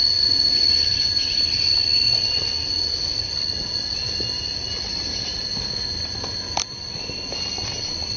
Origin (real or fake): real